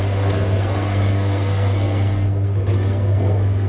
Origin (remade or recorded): remade